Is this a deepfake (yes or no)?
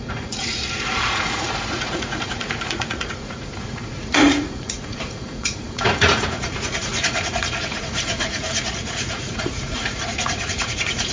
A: yes